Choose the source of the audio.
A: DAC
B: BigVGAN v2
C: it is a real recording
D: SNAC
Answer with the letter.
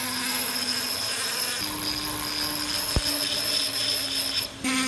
C